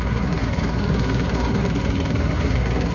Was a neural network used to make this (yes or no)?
yes